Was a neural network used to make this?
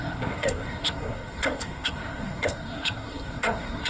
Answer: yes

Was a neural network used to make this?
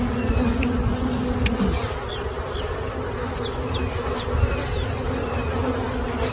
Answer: no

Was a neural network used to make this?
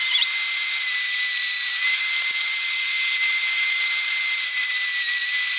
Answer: yes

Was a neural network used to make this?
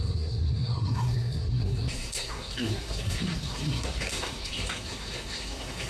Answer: yes